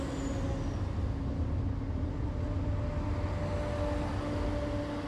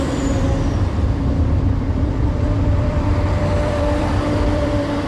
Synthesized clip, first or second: second